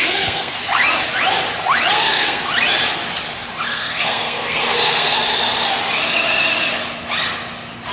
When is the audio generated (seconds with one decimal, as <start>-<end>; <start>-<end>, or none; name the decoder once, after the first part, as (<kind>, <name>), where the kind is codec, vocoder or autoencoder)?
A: 0.0-0.6 (codec, SNAC); 1.9-2.4; 3.7-5.2